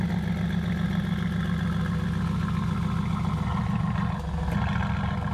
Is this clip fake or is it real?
real